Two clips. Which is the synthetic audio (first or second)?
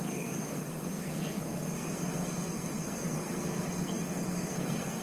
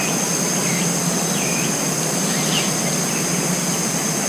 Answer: first